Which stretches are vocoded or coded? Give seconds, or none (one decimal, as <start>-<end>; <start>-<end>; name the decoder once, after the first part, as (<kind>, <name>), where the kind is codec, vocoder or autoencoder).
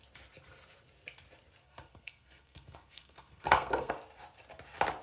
1.6-3.9 (codec, SNAC)